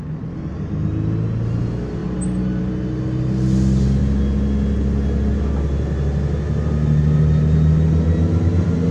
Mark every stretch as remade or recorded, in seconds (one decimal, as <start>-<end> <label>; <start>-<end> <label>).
0.0-8.9 recorded